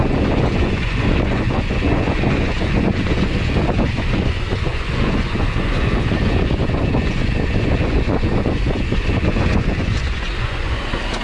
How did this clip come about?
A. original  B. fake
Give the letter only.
B